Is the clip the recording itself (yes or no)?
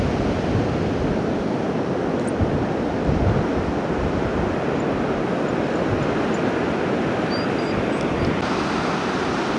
yes